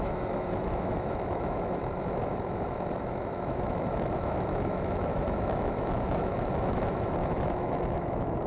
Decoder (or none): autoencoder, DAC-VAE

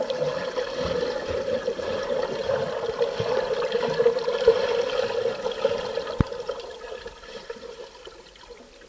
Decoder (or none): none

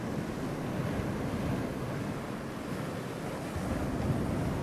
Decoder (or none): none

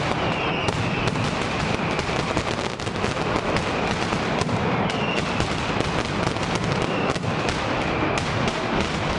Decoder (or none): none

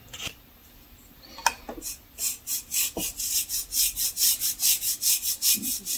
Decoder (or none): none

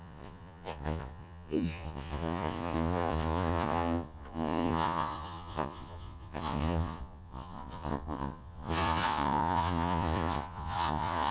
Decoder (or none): vocoder, Vocos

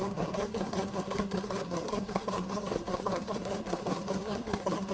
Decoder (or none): codec, SNAC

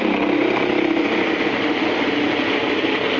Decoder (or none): none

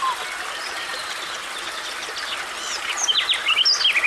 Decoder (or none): none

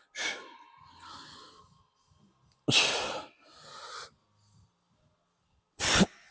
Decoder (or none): none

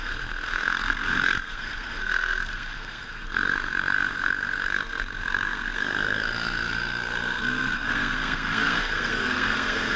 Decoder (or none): codec, SNAC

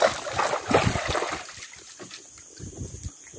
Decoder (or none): none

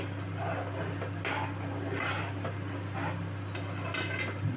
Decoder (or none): none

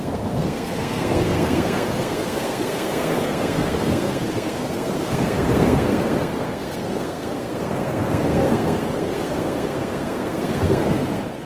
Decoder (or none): codec, SNAC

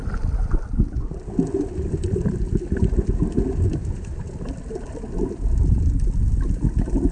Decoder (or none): none